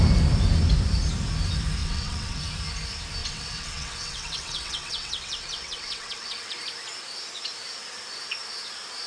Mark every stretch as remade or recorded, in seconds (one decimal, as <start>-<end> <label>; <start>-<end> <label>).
0.0-1.8 recorded; 1.8-2.4 remade; 2.4-3.2 recorded; 3.2-6.6 remade; 6.6-9.1 recorded